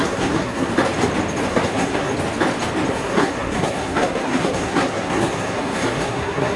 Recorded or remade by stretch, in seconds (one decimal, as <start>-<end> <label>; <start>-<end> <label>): 0.0-0.7 remade; 0.7-1.5 recorded; 1.5-2.1 remade; 2.1-2.9 recorded; 2.9-6.6 remade